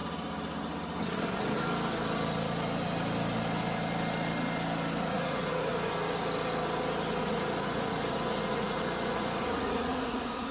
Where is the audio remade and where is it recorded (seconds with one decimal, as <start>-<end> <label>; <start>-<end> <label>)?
0.0-5.0 recorded; 5.0-5.7 remade; 5.7-7.2 recorded; 7.2-10.5 remade